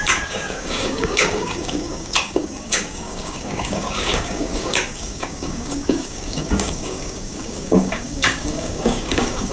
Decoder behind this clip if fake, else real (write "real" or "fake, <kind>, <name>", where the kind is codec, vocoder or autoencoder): fake, codec, DAC